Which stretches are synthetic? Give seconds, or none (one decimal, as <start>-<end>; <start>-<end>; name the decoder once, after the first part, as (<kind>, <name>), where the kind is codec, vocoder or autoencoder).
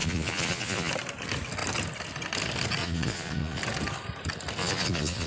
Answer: 0.0-0.9 (vocoder, Vocos); 2.8-3.6; 4.6-5.3